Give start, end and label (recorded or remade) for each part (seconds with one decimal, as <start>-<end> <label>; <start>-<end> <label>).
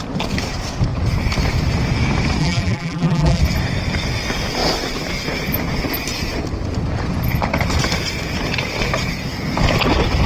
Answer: 0.0-2.4 recorded; 2.4-3.4 remade; 3.4-10.3 recorded